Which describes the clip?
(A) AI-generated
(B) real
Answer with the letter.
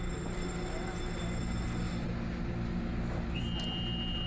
B